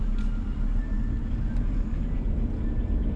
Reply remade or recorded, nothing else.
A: recorded